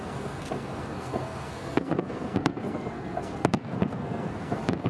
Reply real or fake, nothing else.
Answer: fake